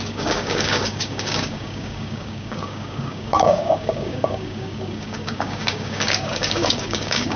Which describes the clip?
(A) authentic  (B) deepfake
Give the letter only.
B